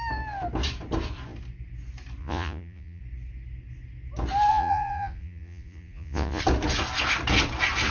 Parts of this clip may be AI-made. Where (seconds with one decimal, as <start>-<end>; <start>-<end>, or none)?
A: 2.2-3.0; 4.5-6.4